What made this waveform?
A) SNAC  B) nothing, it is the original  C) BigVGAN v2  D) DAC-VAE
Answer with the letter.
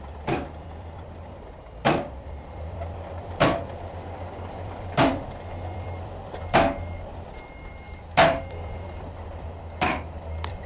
C